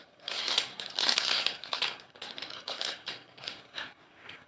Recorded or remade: remade